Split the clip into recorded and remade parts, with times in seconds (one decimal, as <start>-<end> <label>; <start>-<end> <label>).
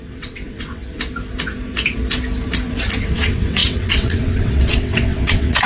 0.0-0.8 remade; 0.8-3.0 recorded; 3.0-5.7 remade